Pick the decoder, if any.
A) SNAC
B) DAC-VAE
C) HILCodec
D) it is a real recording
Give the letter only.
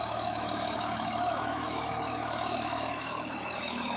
B